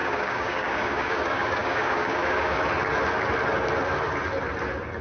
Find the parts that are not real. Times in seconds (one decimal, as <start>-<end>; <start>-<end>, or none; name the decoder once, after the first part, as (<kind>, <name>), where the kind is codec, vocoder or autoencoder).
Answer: 0.0-2.6 (codec, DAC)